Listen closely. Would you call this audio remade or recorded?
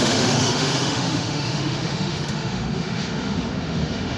remade